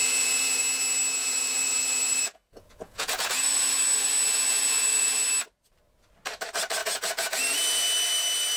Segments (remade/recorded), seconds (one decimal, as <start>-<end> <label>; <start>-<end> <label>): 0.0-0.6 remade; 0.6-1.2 recorded; 1.2-5.3 remade; 5.3-6.8 recorded; 6.8-7.4 remade; 7.4-8.6 recorded